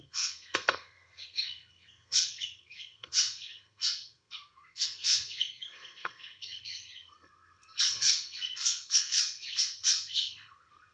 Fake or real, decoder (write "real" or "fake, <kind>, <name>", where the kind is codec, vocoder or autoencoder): fake, codec, SNAC